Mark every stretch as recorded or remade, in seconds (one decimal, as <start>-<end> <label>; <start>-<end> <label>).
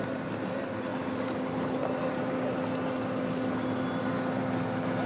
0.0-5.1 recorded